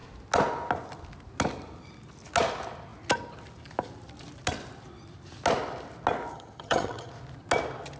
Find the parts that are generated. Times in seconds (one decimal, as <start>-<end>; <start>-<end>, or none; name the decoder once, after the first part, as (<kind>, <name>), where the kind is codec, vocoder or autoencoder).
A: 6.3-7.1 (vocoder, HiFi-GAN)